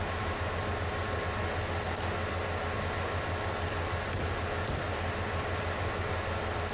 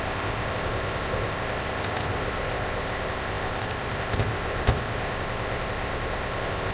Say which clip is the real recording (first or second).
first